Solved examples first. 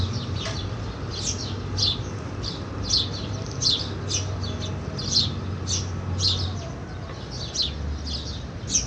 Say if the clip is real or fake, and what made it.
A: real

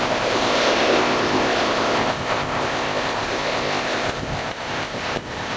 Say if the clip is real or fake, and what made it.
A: fake, codec, ZipCodec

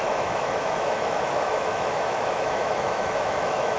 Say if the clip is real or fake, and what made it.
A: fake, autoencoder, DAC-VAE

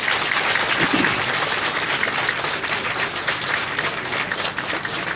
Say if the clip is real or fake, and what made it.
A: real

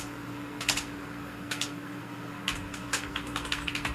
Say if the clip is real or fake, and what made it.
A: fake, codec, SNAC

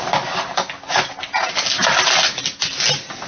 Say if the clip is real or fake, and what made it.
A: real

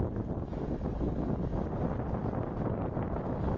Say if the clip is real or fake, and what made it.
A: real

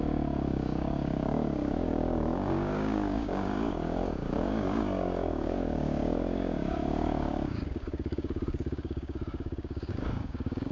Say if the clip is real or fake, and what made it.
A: fake, codec, DAC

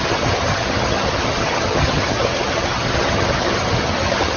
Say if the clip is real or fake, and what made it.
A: fake, vocoder, HiFi-GAN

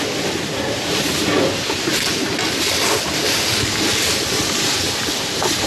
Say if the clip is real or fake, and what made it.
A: real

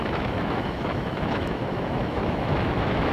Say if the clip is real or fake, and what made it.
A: fake, autoencoder, DAC-VAE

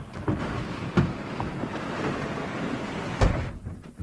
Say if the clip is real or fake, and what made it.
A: real